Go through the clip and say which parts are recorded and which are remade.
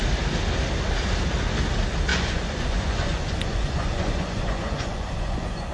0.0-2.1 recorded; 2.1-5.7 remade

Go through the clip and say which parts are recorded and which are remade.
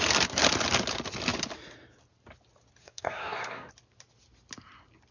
0.0-2.8 recorded; 2.8-3.7 remade; 3.7-5.1 recorded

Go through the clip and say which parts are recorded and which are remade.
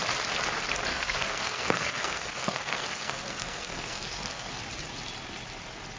0.0-0.9 recorded; 0.9-4.5 remade; 4.5-6.0 recorded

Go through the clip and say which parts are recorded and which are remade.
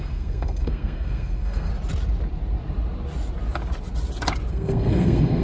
0.0-1.7 remade; 1.7-4.5 recorded; 4.5-5.4 remade